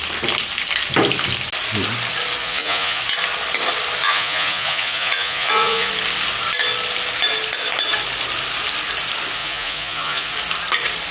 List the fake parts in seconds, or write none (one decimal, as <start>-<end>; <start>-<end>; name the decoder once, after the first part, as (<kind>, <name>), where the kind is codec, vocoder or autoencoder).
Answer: 2.4-3.0 (vocoder, Vocos); 4.0-5.9; 9.4-10.3